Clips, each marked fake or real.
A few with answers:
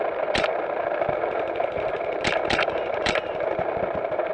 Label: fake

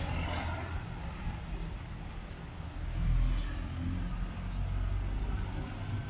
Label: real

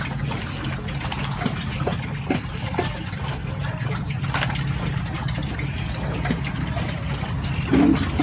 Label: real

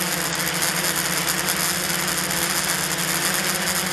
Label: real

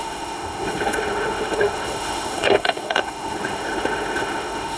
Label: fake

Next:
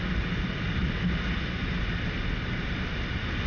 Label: real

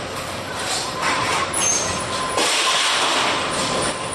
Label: real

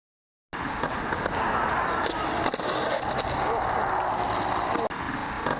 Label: real